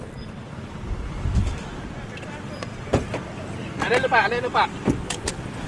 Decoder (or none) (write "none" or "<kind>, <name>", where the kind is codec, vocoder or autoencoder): none